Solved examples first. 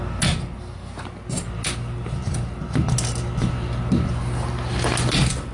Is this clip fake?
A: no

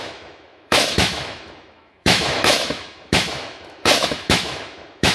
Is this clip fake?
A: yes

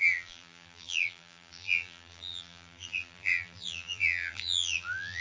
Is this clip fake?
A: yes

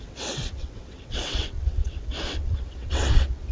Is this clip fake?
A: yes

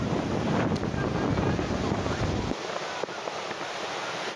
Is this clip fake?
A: no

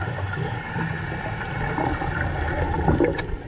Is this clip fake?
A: no